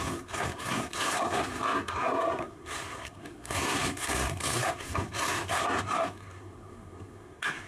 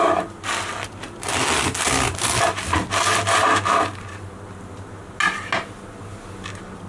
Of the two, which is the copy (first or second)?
first